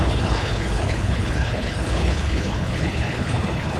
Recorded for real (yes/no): no